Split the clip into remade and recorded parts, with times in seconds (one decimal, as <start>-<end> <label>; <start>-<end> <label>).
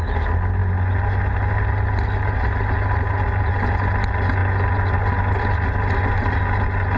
0.0-7.0 recorded